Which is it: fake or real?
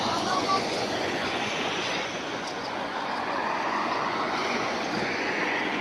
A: fake